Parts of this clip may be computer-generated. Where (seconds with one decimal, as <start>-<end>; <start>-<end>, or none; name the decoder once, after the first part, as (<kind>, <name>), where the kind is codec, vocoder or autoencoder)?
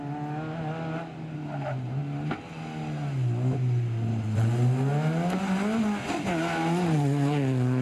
none